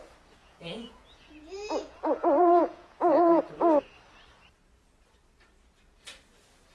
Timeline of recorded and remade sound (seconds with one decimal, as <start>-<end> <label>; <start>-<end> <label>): 0.0-0.4 recorded; 0.4-3.4 remade; 3.4-6.7 recorded